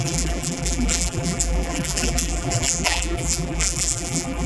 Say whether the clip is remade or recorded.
remade